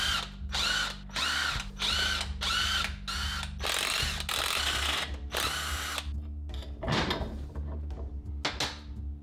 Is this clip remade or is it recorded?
recorded